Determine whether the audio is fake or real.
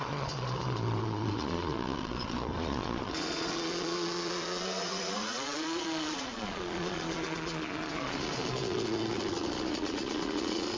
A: fake